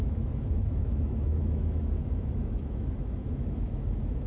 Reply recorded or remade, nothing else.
remade